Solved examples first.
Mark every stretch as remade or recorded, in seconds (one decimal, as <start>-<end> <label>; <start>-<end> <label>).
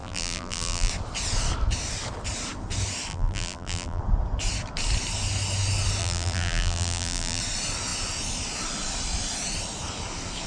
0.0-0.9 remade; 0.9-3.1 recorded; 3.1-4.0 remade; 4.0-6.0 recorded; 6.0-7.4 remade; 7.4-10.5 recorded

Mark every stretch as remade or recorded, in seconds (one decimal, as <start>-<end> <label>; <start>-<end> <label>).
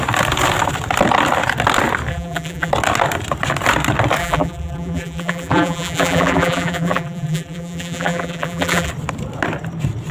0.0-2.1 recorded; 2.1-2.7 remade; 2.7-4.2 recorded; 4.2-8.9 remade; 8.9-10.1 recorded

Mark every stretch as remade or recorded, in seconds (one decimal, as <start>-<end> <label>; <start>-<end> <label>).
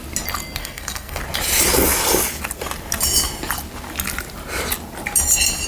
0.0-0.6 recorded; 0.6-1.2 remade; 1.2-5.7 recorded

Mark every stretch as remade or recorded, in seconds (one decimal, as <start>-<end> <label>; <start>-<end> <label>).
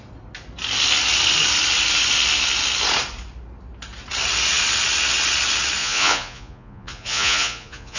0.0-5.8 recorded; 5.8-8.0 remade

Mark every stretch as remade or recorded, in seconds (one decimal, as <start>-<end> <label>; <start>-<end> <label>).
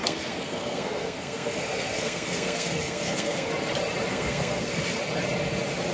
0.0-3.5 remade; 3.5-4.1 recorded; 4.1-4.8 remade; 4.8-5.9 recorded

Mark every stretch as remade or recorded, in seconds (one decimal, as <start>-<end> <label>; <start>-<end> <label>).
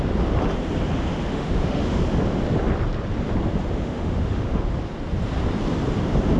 0.0-1.3 recorded; 1.3-2.0 remade; 2.0-3.8 recorded; 3.8-4.6 remade; 4.6-6.4 recorded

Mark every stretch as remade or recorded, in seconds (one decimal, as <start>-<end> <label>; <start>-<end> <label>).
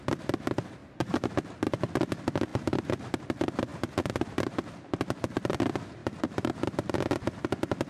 0.0-0.8 recorded; 0.8-1.3 remade; 1.3-2.5 recorded; 2.5-3.2 remade; 3.2-6.0 recorded; 6.0-6.9 remade; 6.9-7.9 recorded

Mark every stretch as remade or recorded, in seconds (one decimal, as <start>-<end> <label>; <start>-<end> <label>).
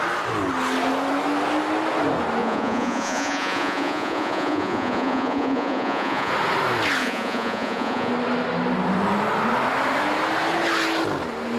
0.0-2.4 recorded; 2.4-6.3 remade; 6.3-7.0 recorded; 7.0-8.1 remade; 8.1-11.6 recorded